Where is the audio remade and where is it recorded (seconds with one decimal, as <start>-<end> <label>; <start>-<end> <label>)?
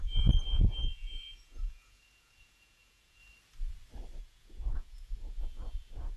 0.0-3.2 remade; 3.2-4.2 recorded; 4.2-6.2 remade